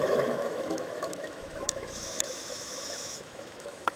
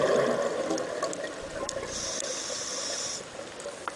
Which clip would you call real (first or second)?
second